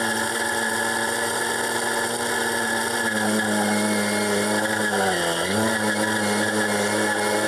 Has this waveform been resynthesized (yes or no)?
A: no